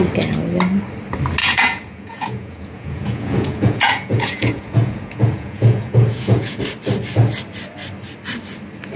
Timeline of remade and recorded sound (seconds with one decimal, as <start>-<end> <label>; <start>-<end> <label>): 0.0-1.4 recorded; 1.4-6.6 remade; 6.6-9.0 recorded